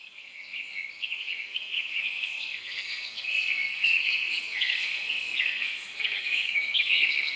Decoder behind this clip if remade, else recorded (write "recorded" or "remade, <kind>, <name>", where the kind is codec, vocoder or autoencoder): remade, codec, SNAC